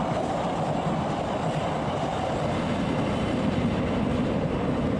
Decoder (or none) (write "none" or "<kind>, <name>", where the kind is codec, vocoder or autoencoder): none